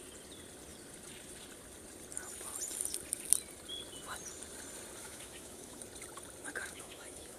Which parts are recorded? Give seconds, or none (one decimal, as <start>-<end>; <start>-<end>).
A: 0.0-5.0; 5.8-6.6